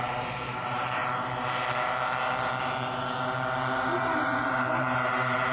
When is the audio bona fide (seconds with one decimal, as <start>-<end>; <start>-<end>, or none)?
1.0-4.0